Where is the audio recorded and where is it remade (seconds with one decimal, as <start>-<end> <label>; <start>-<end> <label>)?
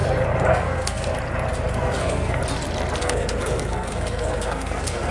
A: 0.0-0.5 recorded; 0.5-1.1 remade; 1.1-1.7 recorded; 1.7-2.4 remade; 2.4-3.0 recorded; 3.0-5.1 remade